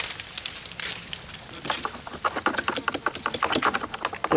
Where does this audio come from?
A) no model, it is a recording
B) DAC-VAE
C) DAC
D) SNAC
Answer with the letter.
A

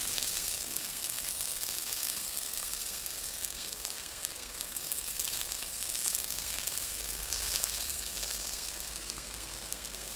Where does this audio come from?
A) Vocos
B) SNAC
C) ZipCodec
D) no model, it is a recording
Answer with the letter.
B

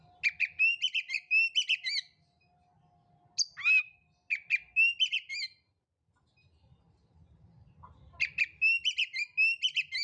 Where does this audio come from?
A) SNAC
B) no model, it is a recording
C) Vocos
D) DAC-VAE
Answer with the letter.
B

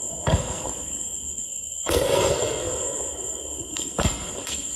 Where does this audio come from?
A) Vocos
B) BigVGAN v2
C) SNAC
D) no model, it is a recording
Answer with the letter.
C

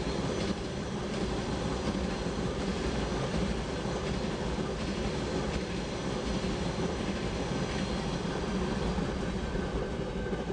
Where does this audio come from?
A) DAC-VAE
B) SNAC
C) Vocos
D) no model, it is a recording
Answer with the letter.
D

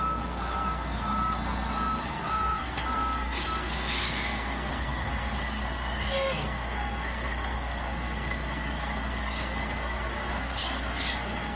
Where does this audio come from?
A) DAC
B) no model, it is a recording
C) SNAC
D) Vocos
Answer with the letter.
C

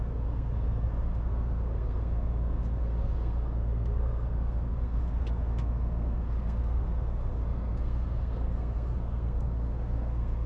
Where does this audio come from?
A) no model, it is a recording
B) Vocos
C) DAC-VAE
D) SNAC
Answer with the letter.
D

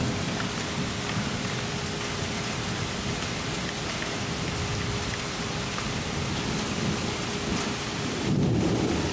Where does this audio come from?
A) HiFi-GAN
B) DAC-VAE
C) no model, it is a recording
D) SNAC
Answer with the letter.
C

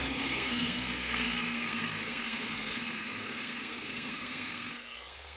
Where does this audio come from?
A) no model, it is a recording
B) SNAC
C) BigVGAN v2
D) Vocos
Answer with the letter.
B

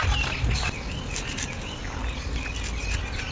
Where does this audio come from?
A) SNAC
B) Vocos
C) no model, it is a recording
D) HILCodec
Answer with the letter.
C